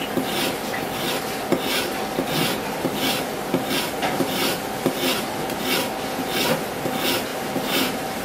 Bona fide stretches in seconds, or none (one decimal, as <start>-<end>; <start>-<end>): 0.0-4.0; 4.6-7.3